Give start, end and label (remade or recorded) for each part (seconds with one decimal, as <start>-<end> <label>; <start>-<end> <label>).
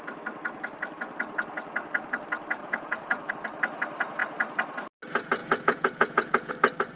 0.0-2.6 recorded; 2.6-3.3 remade; 3.3-5.4 recorded; 5.4-6.5 remade; 6.5-7.0 recorded